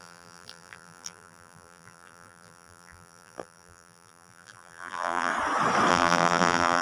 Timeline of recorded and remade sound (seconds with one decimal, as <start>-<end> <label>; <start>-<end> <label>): 0.0-5.3 remade; 5.3-5.9 recorded; 5.9-6.8 remade